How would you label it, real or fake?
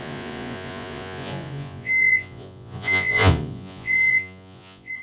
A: fake